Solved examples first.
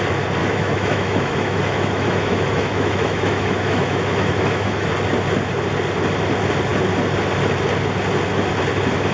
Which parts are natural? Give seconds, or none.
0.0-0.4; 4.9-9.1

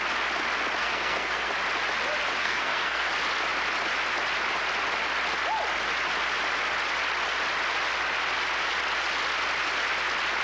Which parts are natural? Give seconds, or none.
0.0-0.8; 1.5-2.4; 3.1-10.4

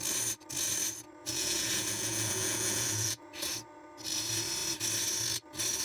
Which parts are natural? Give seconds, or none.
0.0-1.2; 3.3-5.8

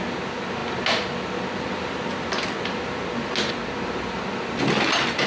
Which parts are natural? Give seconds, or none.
0.0-5.3

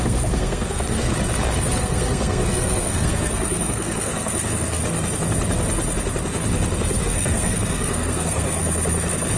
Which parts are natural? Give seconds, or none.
1.1-1.8; 4.8-7.0; 8.6-9.4

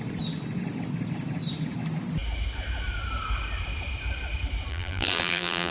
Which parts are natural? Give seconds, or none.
0.0-4.7